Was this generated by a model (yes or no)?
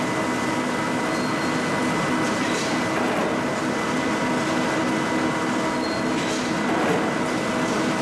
no